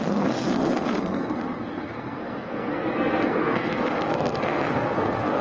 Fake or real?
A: fake